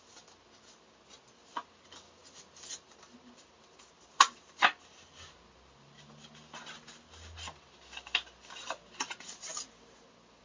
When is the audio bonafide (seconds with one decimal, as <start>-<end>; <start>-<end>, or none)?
0.0-10.4